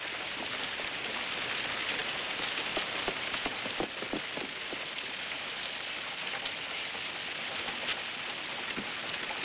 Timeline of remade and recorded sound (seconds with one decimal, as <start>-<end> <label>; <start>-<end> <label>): 0.0-9.4 recorded